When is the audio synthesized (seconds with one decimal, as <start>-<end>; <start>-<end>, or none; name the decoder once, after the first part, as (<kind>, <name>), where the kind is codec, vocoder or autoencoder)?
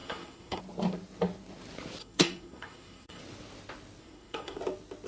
0.0-0.6 (codec, SNAC); 2.0-3.2; 4.0-4.6